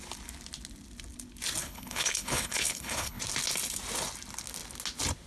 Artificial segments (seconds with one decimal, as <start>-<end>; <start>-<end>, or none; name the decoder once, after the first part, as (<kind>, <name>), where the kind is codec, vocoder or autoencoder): 1.6-3.2 (codec, HILCodec)